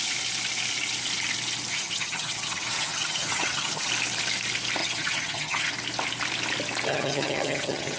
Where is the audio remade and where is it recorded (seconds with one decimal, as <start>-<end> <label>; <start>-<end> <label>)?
0.0-1.7 recorded; 1.7-3.9 remade; 3.9-4.8 recorded; 4.8-5.7 remade; 5.7-6.9 recorded; 6.9-8.0 remade